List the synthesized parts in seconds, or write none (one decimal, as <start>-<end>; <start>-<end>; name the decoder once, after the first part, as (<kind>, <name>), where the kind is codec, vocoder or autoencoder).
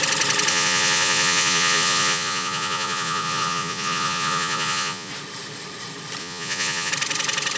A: 0.5-5.1 (vocoder, Vocos); 6.2-6.9